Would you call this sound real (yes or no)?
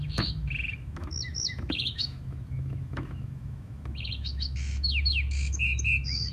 no